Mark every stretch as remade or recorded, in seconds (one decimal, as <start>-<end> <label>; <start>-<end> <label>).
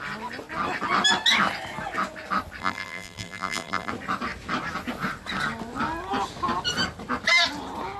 0.0-2.6 recorded; 2.6-3.9 remade; 3.9-8.0 recorded